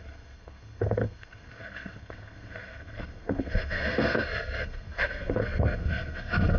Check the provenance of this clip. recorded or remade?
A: remade